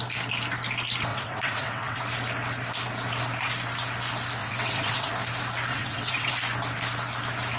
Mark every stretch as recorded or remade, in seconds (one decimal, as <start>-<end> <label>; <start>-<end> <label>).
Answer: 0.0-1.1 recorded; 1.1-2.0 remade; 2.0-4.4 recorded; 4.4-5.1 remade; 5.1-5.7 recorded; 5.7-6.3 remade; 6.3-7.6 recorded